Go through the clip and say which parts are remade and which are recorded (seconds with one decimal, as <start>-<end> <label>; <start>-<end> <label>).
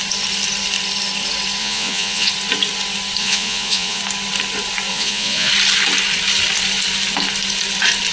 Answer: 0.0-1.6 recorded; 1.6-2.3 remade; 2.3-3.2 recorded; 3.2-4.0 remade; 4.0-4.9 recorded; 4.9-5.5 remade; 5.5-8.1 recorded